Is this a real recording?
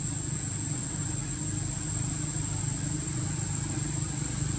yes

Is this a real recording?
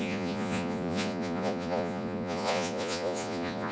no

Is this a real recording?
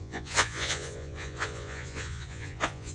no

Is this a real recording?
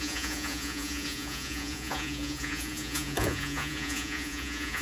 no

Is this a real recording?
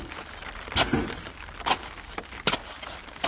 yes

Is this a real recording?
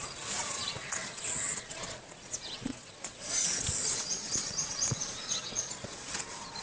no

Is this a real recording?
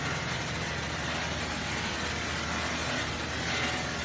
yes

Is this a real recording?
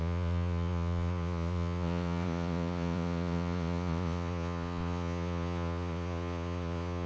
no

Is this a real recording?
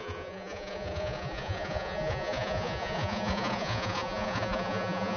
no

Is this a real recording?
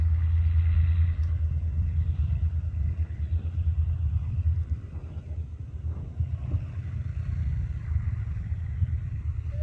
yes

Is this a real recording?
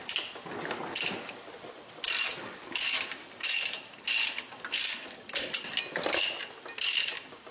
yes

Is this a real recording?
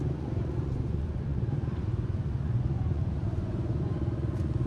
no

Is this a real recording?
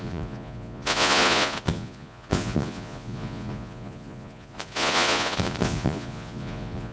no